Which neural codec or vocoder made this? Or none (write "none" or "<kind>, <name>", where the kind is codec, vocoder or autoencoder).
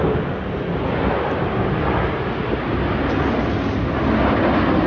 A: none